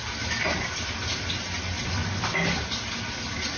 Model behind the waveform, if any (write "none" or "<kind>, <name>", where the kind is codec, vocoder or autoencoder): none